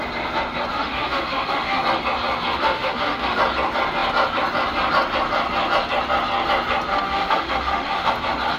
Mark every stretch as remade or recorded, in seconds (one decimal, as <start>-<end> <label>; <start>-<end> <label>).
0.0-0.7 recorded; 0.7-1.8 remade; 1.8-2.5 recorded; 2.5-3.4 remade; 3.4-6.9 recorded; 6.9-8.1 remade; 8.1-8.6 recorded